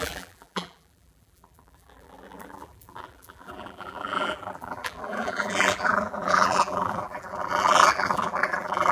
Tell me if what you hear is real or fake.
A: fake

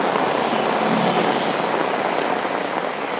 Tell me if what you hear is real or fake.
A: real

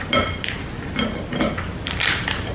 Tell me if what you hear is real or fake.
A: real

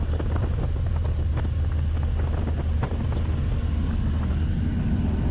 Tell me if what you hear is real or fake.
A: real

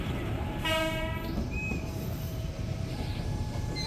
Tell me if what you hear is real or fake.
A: fake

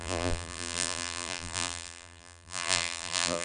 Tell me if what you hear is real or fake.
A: fake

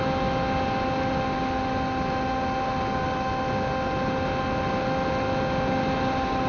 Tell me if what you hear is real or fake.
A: real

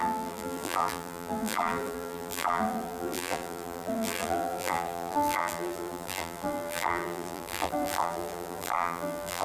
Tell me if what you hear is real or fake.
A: fake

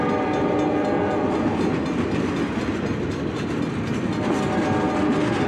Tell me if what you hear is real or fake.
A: real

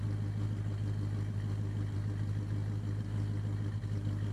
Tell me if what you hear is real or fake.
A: real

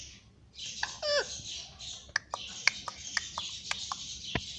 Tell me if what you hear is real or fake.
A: real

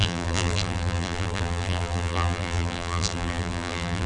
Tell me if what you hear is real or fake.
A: fake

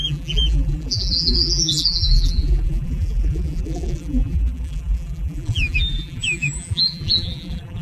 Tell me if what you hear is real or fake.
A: fake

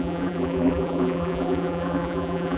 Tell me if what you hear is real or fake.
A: fake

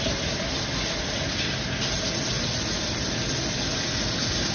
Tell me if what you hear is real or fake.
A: real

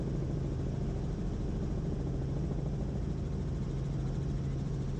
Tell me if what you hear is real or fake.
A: real